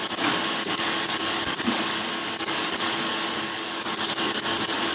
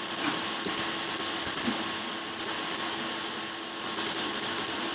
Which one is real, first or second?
second